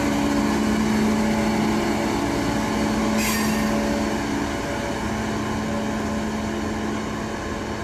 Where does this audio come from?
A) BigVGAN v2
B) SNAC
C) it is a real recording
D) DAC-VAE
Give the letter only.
C